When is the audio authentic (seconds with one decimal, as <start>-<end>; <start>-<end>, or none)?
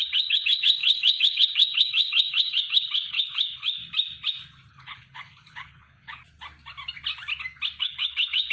3.8-4.7; 6.2-7.8